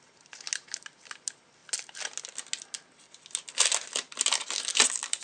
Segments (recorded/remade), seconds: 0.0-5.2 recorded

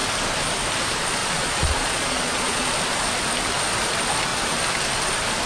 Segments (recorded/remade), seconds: 0.0-1.2 recorded; 1.2-2.7 remade; 2.7-5.5 recorded

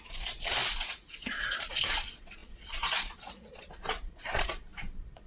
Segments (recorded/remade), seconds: 0.0-5.3 remade

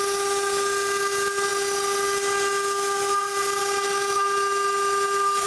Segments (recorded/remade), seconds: 0.0-5.5 recorded

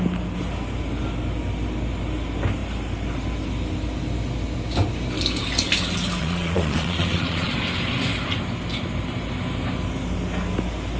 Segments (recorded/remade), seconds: 0.0-6.2 recorded; 6.2-7.5 remade; 7.5-11.0 recorded

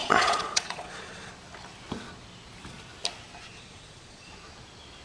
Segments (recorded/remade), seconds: 0.0-1.3 remade; 1.3-3.5 recorded; 3.5-4.3 remade; 4.3-5.0 recorded

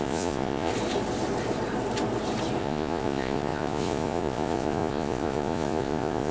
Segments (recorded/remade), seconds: 0.0-0.7 remade; 0.7-2.6 recorded; 2.6-6.3 remade